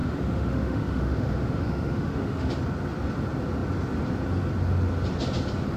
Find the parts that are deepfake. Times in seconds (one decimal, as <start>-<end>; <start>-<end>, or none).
0.0-2.5